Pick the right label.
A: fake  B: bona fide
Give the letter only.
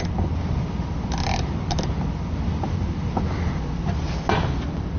B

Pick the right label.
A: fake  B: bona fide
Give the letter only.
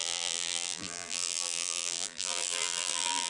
A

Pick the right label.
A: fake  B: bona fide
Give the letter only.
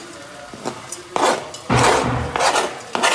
B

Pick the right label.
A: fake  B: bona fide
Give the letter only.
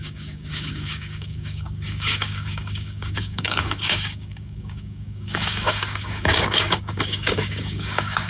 A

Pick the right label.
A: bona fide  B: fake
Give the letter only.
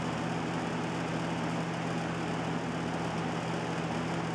A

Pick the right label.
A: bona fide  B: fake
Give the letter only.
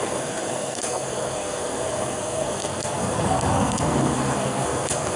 B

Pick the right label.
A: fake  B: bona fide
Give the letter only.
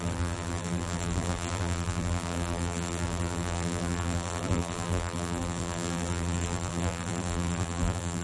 A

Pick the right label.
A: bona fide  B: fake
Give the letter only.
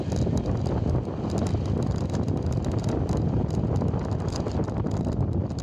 A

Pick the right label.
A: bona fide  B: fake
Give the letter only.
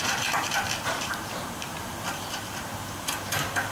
B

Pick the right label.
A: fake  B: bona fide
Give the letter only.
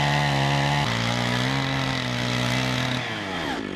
B